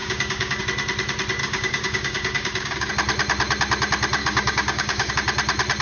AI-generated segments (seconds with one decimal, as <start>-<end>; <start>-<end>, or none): 0.0-0.6; 1.4-2.9; 4.2-5.1